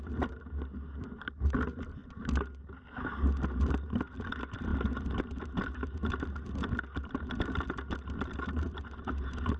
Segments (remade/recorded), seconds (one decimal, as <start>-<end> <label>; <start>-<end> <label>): 0.0-9.6 recorded